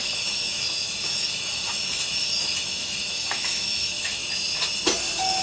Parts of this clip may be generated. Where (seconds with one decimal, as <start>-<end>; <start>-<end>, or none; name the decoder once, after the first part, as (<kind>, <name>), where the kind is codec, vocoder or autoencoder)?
0.0-4.2 (autoencoder, DAC-VAE)